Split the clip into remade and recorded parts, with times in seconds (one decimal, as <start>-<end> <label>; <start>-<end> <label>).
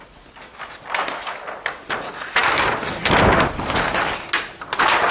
0.0-5.1 recorded